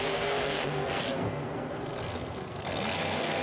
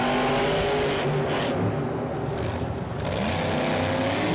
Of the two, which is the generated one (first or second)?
first